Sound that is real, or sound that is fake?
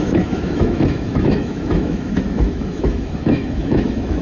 fake